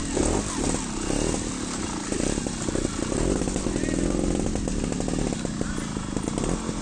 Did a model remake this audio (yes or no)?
no